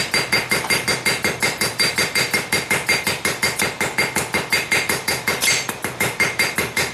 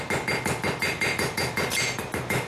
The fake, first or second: first